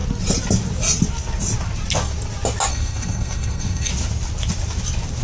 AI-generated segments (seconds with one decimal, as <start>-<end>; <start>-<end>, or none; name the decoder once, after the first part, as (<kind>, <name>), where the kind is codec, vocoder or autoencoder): 2.7-3.9 (codec, SNAC)